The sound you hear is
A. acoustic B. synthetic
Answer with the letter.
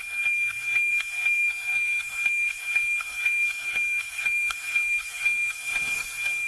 B